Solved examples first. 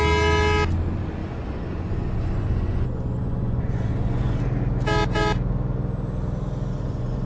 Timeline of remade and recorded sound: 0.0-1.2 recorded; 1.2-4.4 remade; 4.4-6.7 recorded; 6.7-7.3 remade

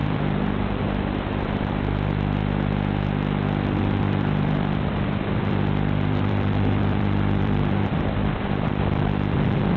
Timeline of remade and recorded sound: 0.0-2.4 remade; 2.4-3.8 recorded; 3.8-9.8 remade

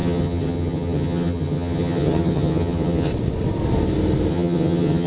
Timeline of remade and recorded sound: 0.0-3.1 remade; 3.1-4.3 recorded; 4.3-5.1 remade